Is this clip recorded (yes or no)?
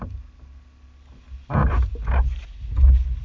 yes